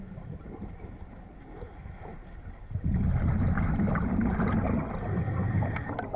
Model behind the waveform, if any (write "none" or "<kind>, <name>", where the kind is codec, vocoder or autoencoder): none